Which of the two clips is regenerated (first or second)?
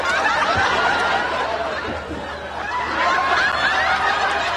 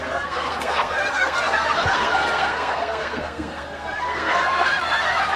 second